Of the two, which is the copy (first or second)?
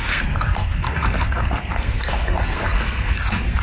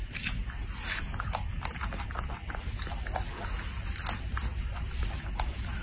first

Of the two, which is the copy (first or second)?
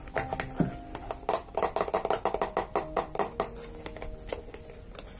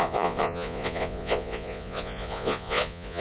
second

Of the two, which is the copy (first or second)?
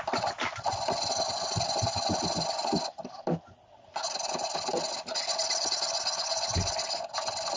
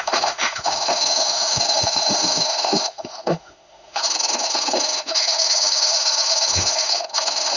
second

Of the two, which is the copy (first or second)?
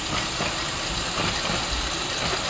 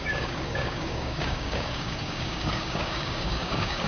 second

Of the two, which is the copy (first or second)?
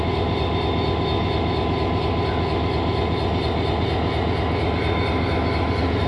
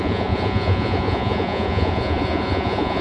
second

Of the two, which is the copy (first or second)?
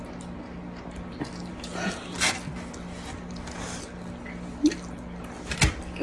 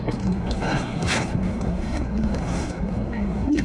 second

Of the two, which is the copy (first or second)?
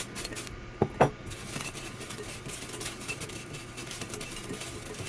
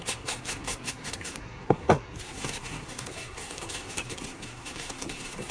second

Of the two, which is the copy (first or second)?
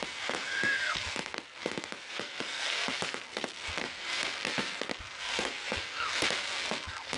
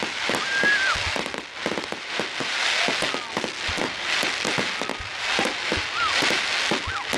first